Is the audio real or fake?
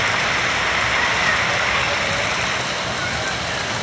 real